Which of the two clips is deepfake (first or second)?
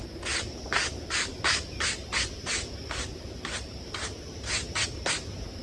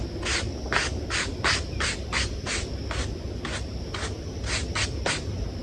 first